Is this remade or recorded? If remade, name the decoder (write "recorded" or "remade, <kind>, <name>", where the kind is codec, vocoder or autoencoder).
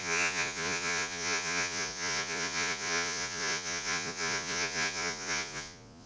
remade, vocoder, Vocos